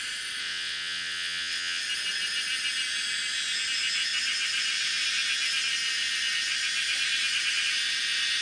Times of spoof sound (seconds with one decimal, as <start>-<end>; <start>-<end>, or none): 0.4-1.8